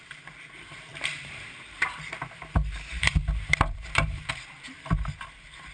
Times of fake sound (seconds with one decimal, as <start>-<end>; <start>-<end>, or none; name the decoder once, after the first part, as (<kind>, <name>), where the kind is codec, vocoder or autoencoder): 0.9-4.3 (vocoder, BigVGAN v2)